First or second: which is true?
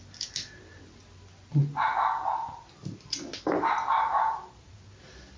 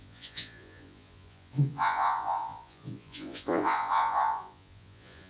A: first